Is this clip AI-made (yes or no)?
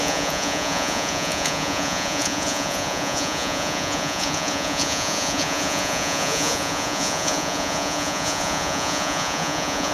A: yes